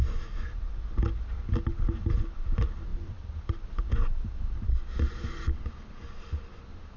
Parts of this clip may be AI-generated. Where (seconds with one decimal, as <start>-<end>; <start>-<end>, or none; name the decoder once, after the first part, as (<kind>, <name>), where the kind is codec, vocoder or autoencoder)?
none